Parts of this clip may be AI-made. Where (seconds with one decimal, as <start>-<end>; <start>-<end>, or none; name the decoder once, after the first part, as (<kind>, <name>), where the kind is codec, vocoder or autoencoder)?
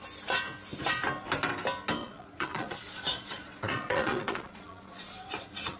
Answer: 2.0-5.8 (vocoder, Vocos)